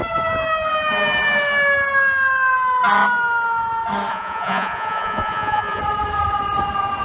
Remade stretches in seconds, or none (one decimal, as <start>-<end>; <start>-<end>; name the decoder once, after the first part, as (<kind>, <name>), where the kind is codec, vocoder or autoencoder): 4.1-5.8 (vocoder, Vocos)